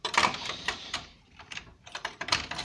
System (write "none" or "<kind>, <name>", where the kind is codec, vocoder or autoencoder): vocoder, BigVGAN v2